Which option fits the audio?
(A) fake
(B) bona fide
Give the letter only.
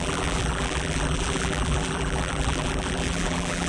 A